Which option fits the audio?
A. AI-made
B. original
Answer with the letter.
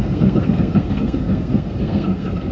A